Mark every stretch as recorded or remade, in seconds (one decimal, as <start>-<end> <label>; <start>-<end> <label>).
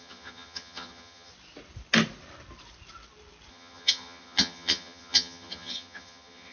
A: 0.0-1.3 remade; 1.3-3.5 recorded; 3.5-6.5 remade